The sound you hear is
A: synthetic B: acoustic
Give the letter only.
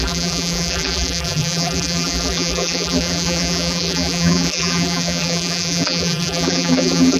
A